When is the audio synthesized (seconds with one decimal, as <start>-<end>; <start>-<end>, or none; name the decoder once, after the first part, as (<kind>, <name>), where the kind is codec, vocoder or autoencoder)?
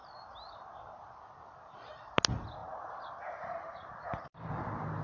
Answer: 2.6-4.5 (vocoder, BigVGAN v2)